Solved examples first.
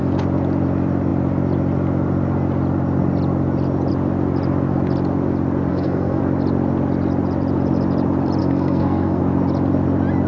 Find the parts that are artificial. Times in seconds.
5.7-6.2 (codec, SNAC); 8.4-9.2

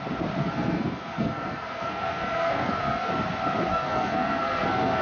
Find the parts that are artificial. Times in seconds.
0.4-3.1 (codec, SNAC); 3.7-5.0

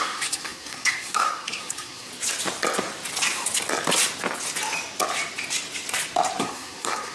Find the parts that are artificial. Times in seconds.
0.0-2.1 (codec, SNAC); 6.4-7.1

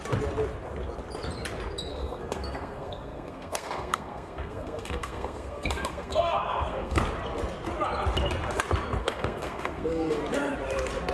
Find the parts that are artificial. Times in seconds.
1.9-7.0 (codec, SNAC); 9.0-10.2